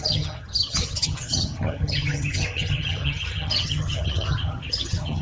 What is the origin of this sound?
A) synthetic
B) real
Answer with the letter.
A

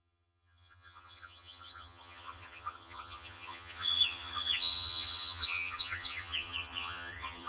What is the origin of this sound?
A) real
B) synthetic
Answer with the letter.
B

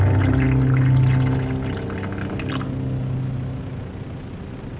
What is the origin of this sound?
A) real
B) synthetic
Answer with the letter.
A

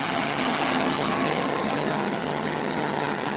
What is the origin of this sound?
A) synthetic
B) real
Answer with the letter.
A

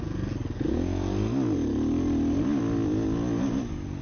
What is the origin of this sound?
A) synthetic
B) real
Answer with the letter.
B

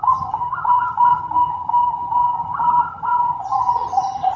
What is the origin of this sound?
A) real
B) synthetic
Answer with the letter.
B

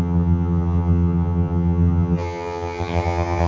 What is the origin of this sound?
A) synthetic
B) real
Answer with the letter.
A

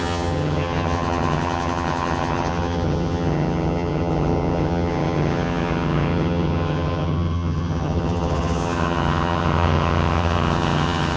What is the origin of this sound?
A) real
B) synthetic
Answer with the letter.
B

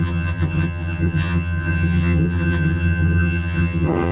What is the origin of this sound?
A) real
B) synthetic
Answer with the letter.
B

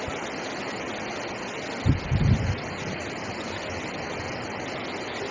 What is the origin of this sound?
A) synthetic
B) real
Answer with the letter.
B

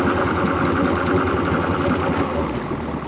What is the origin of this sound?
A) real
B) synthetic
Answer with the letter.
A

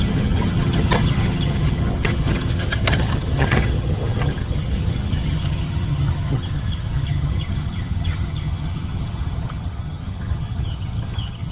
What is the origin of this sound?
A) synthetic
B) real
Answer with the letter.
A